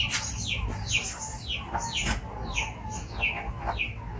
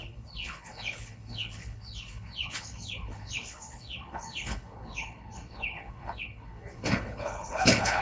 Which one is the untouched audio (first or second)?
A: first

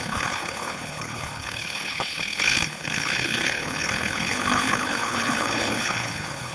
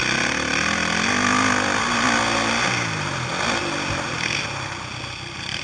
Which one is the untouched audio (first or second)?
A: second